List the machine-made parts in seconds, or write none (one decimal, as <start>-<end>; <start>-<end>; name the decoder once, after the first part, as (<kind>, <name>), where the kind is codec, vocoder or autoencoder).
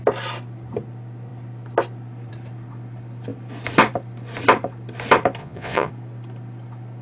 5.4-5.9 (vocoder, Vocos)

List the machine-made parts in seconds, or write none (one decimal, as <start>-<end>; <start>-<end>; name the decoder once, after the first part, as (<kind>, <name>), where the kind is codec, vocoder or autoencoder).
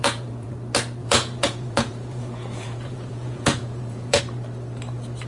0.0-0.5 (vocoder, Vocos); 1.0-4.2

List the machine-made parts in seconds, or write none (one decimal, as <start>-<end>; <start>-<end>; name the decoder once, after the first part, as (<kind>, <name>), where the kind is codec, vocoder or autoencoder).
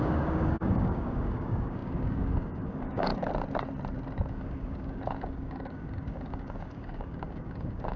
0.0-3.1 (codec, DAC); 4.3-8.0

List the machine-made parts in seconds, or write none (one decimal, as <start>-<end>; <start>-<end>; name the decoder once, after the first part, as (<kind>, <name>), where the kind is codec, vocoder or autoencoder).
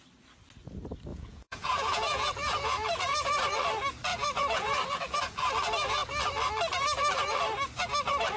1.1-3.4 (vocoder, Vocos); 4.1-5.5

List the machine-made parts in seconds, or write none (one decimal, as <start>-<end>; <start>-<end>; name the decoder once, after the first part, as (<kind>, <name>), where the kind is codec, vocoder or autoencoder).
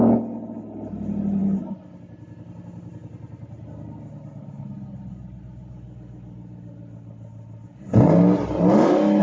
none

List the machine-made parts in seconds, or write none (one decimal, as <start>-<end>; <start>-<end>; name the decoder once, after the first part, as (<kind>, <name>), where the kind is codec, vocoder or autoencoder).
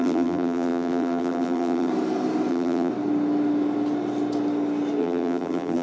0.0-1.9 (vocoder, BigVGAN v2); 2.5-2.9; 5.0-5.8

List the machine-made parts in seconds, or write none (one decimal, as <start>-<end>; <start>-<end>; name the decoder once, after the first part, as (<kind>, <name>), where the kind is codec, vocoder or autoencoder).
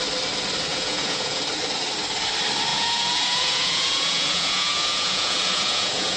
0.7-1.4 (vocoder, Vocos); 2.7-6.2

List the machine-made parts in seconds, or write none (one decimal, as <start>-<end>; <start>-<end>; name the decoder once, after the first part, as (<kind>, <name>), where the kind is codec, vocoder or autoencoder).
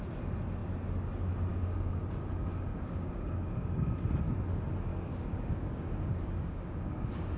1.5-2.0 (codec, DAC); 2.7-4.1; 4.9-7.4